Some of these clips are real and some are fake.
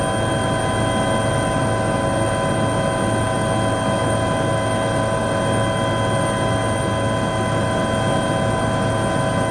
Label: real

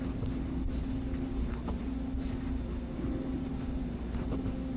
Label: real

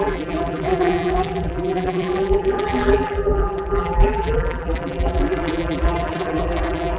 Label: fake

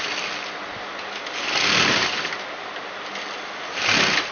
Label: real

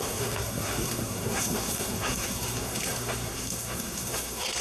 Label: fake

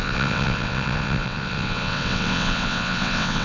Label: fake